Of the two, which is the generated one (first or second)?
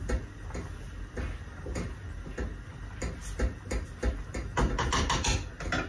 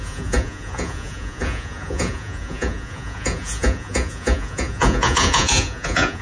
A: second